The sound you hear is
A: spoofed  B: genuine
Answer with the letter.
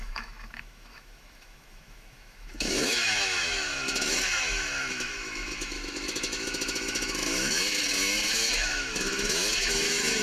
A